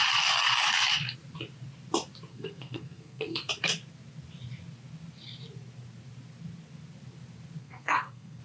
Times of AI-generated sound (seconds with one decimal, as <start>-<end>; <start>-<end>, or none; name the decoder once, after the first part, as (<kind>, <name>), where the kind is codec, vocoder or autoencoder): 2.3-3.5 (codec, SNAC); 7.6-8.4